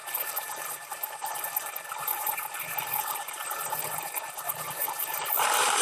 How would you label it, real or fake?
fake